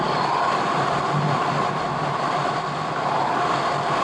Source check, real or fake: real